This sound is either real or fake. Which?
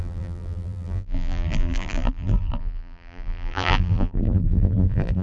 fake